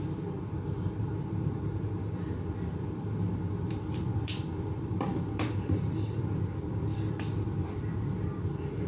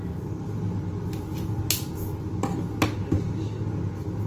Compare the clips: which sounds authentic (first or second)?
second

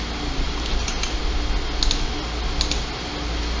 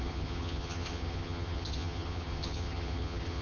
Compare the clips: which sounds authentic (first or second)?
first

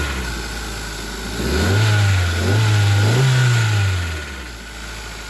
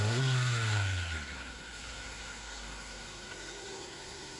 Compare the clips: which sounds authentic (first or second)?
first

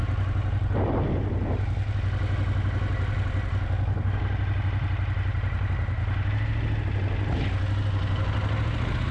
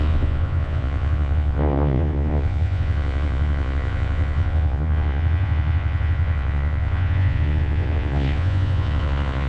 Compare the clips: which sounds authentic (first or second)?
first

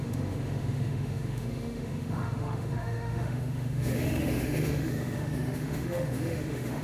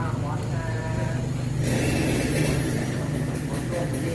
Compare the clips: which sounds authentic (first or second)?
second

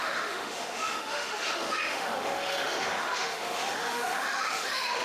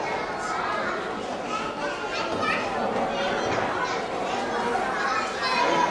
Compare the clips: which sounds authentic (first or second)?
second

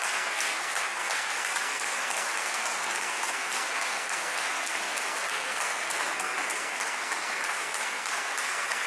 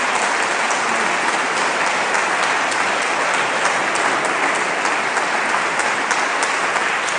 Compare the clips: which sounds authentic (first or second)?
second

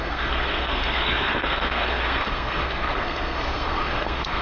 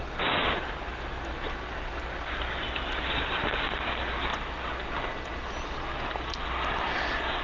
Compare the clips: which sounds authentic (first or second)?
second